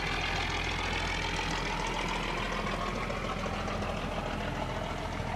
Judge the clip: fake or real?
real